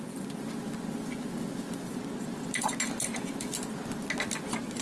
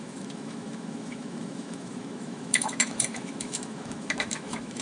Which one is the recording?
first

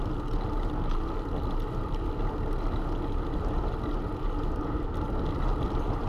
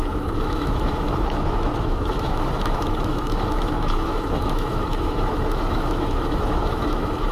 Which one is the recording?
first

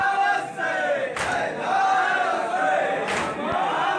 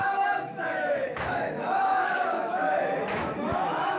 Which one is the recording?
first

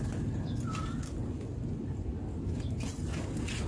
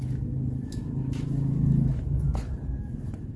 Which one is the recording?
first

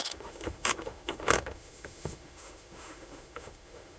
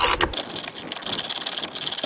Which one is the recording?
second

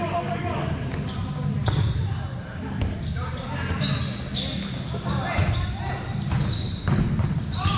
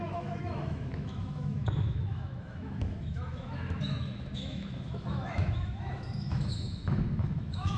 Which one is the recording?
first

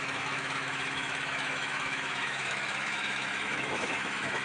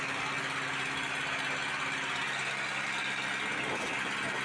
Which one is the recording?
second